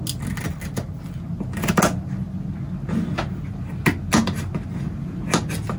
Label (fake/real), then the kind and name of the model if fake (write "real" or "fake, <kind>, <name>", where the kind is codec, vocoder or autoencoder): real